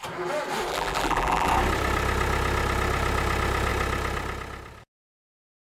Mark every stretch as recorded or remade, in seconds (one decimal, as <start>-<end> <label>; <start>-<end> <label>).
0.0-0.7 recorded; 0.7-1.5 remade; 1.5-5.6 recorded